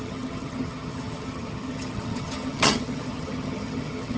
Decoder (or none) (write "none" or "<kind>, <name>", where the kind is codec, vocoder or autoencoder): vocoder, HiFi-GAN